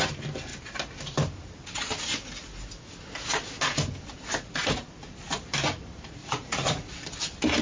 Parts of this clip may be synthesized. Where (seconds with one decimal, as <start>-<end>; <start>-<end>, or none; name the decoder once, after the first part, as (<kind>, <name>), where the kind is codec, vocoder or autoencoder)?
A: 6.2-6.9 (vocoder, Vocos)